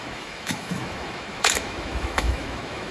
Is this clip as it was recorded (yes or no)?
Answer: no